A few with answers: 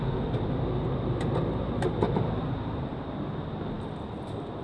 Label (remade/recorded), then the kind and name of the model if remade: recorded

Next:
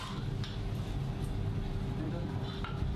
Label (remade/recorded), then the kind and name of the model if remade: recorded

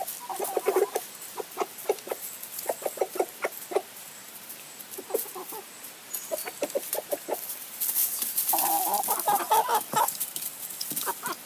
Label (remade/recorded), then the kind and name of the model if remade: recorded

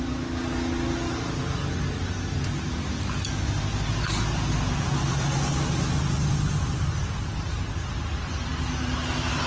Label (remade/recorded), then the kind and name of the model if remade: recorded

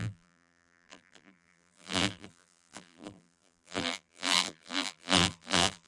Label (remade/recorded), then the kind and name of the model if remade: remade, vocoder, BigVGAN v2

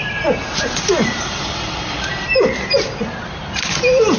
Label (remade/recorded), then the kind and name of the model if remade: remade, vocoder, BigVGAN v2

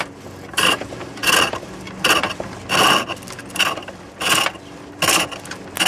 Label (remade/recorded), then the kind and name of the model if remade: recorded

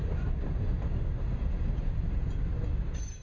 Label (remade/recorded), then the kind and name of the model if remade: recorded